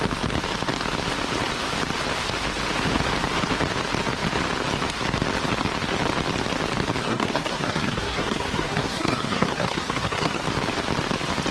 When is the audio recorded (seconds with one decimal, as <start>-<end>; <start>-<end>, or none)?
0.0-7.0; 10.4-11.5